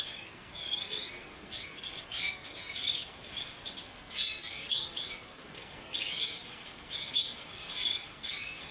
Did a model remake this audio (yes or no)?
yes